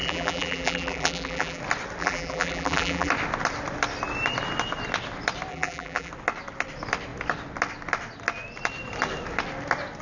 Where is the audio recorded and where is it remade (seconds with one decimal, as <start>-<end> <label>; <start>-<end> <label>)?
0.0-1.6 remade; 1.6-2.0 recorded; 2.0-3.1 remade; 3.1-5.5 recorded; 5.5-6.1 remade; 6.1-10.0 recorded